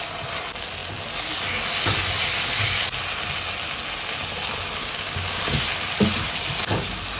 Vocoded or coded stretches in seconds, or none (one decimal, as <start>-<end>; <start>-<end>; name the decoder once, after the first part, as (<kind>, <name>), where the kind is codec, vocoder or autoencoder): 4.8-5.6 (codec, DAC)